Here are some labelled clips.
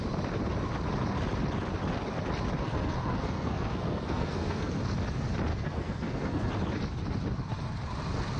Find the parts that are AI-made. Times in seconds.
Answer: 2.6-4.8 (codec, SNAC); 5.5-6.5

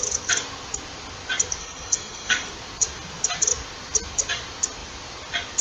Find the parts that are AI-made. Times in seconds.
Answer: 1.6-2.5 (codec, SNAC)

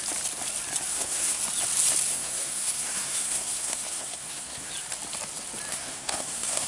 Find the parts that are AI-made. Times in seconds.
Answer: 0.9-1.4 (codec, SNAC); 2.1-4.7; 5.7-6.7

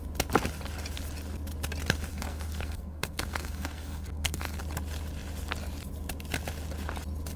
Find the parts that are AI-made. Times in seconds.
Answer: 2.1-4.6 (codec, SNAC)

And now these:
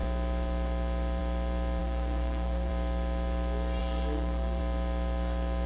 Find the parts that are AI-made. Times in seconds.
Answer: 1.8-2.7 (codec, SNAC); 3.8-4.6

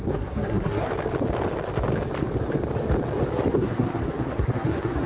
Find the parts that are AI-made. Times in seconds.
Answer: 0.0-0.9 (codec, SNAC); 3.5-5.1

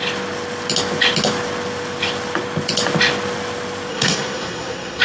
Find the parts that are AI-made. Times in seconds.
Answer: 3.9-5.0 (codec, SNAC)